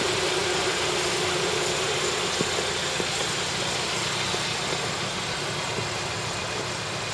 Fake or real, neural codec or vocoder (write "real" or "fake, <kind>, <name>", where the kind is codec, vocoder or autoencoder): real